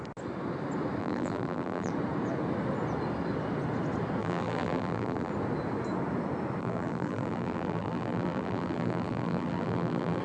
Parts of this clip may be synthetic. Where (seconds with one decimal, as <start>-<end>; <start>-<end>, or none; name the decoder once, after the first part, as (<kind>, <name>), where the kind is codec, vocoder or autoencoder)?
1.0-1.9 (vocoder, BigVGAN v2); 4.2-5.3; 6.6-10.2